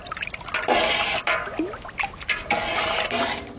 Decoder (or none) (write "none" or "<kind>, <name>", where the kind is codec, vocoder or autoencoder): none